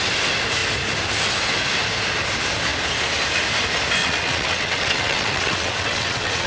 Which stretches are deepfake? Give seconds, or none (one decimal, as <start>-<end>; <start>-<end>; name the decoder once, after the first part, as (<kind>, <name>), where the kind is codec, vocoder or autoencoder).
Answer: 4.0-6.5 (vocoder, WaveNeXt)